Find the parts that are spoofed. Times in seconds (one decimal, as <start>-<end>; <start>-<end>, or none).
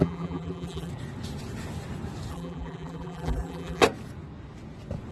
0.0-0.9; 2.3-3.8